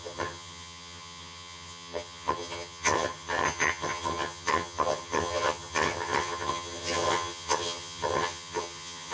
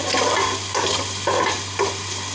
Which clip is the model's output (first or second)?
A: first